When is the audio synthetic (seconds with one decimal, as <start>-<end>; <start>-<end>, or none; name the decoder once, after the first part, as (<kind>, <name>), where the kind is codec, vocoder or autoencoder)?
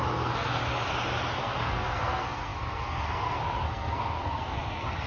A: 0.0-0.6 (codec, SNAC); 1.4-5.1